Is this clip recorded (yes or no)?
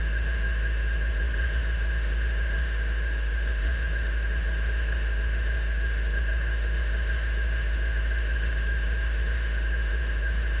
no